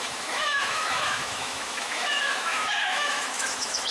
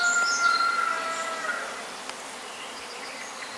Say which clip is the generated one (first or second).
first